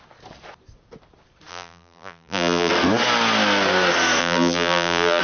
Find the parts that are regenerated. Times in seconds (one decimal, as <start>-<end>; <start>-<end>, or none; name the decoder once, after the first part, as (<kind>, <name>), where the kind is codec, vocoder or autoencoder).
1.5-2.7 (vocoder, BigVGAN v2); 4.2-5.2